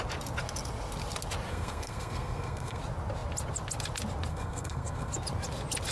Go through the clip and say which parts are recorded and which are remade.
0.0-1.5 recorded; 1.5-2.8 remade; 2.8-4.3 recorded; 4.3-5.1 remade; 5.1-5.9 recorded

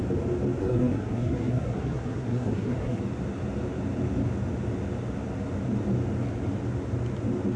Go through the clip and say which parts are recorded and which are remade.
0.0-0.6 recorded; 0.6-3.0 remade; 3.0-7.6 recorded

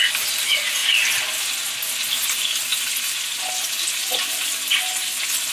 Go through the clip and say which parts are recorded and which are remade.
0.0-2.7 recorded; 2.7-5.5 remade